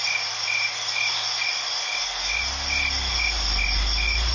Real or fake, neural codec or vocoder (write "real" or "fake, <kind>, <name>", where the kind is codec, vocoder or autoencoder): real